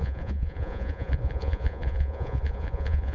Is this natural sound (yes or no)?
no